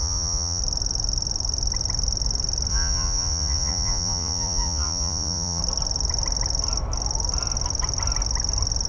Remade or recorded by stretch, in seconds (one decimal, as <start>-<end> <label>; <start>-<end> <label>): 0.0-0.6 remade; 0.6-2.7 recorded; 2.7-5.6 remade; 5.6-8.9 recorded